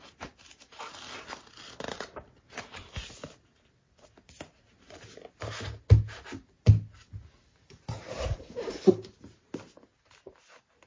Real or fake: real